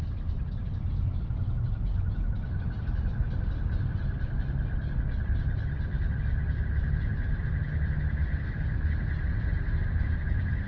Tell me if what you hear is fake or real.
real